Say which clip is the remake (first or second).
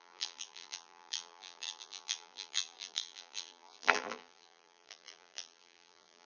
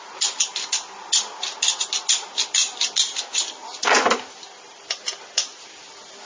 first